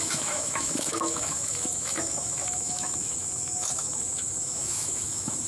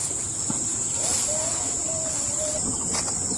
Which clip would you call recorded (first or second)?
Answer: second